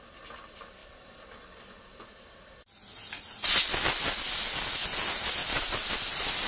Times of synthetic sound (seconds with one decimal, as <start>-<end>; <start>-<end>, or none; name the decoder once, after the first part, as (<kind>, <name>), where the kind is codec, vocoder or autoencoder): 5.4-6.0 (vocoder, BigVGAN v2)